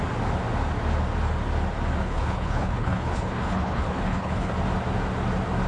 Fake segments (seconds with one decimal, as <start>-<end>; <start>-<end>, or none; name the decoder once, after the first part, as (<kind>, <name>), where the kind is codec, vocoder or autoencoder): 2.0-4.5 (codec, HILCodec)

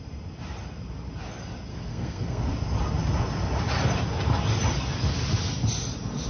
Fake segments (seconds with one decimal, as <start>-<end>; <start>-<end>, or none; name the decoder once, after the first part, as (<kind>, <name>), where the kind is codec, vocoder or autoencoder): 1.7-2.5 (codec, SNAC)

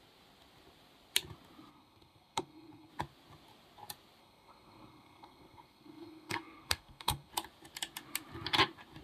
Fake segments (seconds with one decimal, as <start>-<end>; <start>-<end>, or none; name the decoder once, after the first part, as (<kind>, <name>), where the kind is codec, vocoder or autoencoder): 1.7-2.9 (codec, SNAC); 4.2-7.3

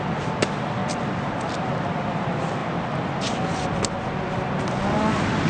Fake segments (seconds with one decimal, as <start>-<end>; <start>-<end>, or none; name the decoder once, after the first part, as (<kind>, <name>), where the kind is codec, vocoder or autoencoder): 0.0-2.6 (vocoder, BigVGAN v2); 5.1-5.5

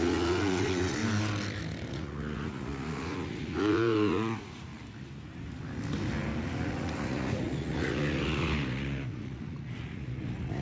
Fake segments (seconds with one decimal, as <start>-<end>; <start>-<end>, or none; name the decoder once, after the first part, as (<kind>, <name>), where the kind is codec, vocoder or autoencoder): 0.0-1.0 (vocoder, Vocos); 1.9-4.7; 6.7-10.6

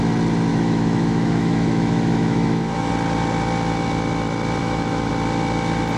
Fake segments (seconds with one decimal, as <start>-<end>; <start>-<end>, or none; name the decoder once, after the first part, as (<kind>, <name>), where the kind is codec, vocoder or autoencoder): 0.5-2.9 (autoencoder, DAC-VAE); 4.6-5.1

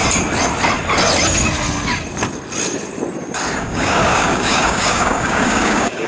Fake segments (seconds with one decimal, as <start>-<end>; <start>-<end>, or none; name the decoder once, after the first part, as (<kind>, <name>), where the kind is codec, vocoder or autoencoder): 3.6-6.1 (codec, DAC)